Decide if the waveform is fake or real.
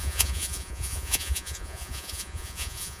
fake